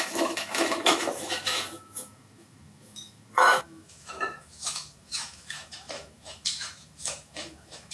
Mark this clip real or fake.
fake